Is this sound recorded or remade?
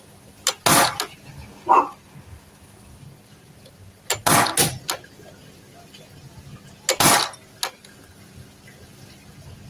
recorded